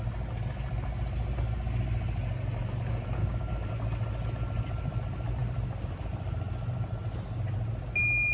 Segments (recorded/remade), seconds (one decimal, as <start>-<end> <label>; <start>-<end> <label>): 0.0-3.2 recorded; 3.2-3.7 remade; 3.7-8.3 recorded